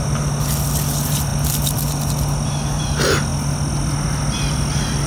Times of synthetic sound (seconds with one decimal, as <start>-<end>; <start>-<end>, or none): none